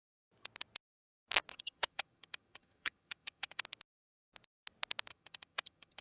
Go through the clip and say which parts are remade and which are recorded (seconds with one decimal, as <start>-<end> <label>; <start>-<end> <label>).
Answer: 0.0-1.5 recorded; 1.5-3.6 remade; 3.6-5.1 recorded; 5.1-6.0 remade